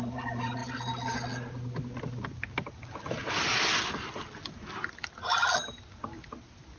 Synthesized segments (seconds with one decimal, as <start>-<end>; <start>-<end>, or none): none